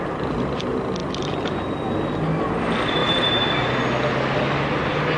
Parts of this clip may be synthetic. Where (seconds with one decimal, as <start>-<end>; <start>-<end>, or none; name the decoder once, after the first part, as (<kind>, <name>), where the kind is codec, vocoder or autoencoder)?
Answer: 3.0-3.5 (vocoder, BigVGAN v2)